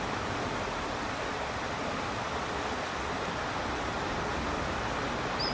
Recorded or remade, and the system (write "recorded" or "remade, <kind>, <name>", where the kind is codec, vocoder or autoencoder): recorded